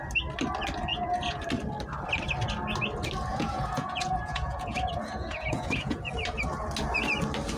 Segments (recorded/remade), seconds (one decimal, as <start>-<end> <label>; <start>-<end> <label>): 0.0-0.9 recorded; 0.9-1.4 remade; 1.4-3.3 recorded; 3.3-6.1 remade; 6.1-7.6 recorded